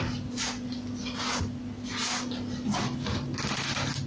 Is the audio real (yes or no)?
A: yes